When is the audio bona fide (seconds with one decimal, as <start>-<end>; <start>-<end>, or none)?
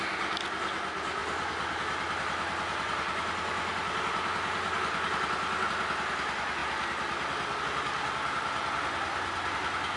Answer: 0.0-10.0